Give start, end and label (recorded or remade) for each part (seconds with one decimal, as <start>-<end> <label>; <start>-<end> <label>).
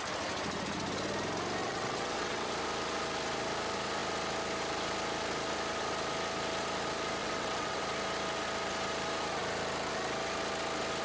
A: 0.0-1.6 recorded; 1.6-2.5 remade; 2.5-7.2 recorded; 7.2-7.8 remade; 7.8-11.0 recorded